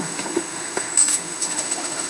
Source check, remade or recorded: remade